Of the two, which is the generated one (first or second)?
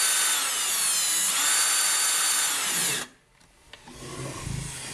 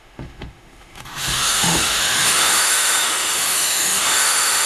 second